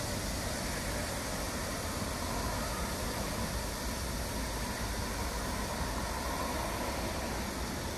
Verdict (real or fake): real